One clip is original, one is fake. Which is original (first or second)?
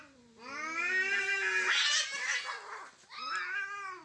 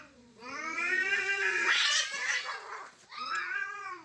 first